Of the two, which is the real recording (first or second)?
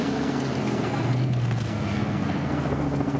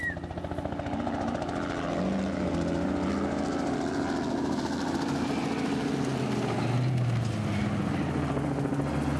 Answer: second